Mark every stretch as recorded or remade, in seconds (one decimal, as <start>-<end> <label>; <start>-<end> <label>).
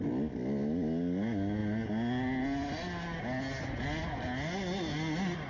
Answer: 0.0-5.5 recorded